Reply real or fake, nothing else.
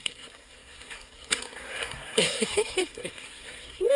fake